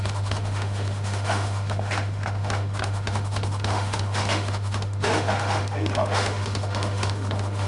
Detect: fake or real fake